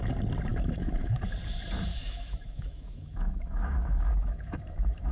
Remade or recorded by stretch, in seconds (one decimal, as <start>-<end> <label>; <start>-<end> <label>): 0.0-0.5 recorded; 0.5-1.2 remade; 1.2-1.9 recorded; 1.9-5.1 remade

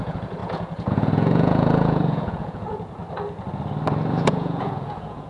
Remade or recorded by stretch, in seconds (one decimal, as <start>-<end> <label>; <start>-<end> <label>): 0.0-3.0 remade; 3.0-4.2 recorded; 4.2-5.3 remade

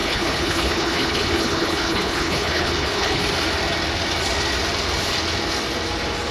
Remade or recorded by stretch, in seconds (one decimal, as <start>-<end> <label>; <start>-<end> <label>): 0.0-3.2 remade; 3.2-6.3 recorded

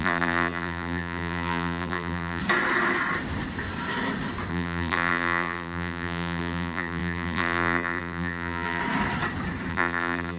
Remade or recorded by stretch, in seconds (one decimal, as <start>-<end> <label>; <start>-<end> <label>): 0.0-2.4 remade; 2.4-4.5 recorded; 4.5-8.8 remade; 8.8-9.7 recorded; 9.7-10.4 remade

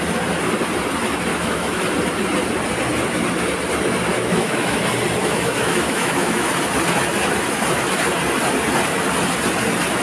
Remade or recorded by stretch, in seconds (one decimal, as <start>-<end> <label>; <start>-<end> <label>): 0.0-1.3 recorded; 1.3-1.8 remade; 1.8-4.1 recorded; 4.1-4.8 remade; 4.8-5.2 recorded; 5.2-6.5 remade; 6.5-10.0 recorded

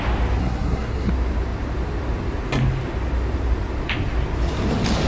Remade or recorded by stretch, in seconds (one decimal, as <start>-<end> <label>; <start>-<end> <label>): 0.0-0.4 recorded; 0.4-1.1 remade; 1.1-5.1 recorded